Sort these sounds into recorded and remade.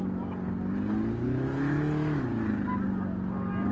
recorded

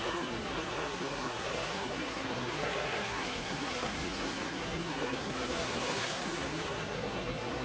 remade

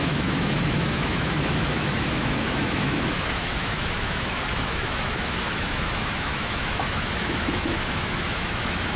remade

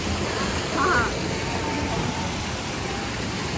recorded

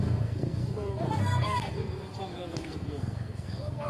remade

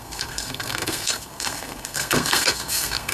remade